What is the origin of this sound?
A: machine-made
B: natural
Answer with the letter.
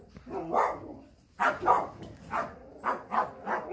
B